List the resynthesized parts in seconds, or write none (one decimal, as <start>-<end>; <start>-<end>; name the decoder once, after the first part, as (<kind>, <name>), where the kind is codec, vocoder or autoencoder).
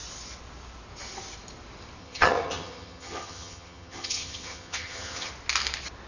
2.0-5.3 (vocoder, HiFi-GAN)